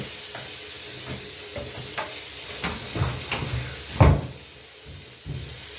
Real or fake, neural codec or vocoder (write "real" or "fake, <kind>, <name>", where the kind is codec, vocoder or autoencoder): real